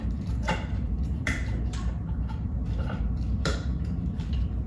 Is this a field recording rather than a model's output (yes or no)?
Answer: no